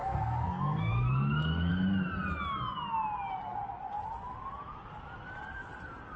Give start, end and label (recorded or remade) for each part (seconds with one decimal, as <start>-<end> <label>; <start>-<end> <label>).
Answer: 0.0-1.7 remade; 1.7-6.2 recorded